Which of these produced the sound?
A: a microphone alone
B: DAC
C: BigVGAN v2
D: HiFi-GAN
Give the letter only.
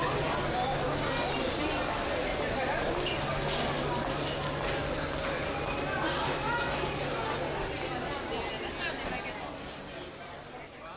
A